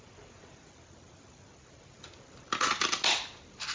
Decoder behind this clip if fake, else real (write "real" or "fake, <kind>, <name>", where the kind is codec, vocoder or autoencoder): real